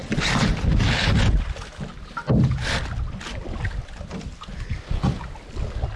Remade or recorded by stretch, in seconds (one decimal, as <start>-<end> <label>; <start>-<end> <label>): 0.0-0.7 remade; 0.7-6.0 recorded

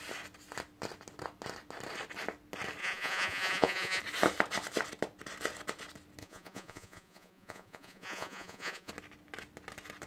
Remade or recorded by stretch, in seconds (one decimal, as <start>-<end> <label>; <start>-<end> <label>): 0.0-2.8 recorded; 2.8-4.0 remade; 4.0-6.2 recorded; 6.2-8.9 remade; 8.9-10.1 recorded

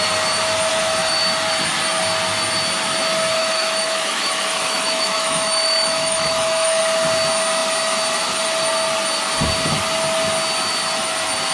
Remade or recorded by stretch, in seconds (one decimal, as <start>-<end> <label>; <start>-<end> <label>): 0.0-0.7 recorded; 0.7-1.2 remade; 1.2-3.4 recorded; 3.4-6.8 remade; 6.8-11.5 recorded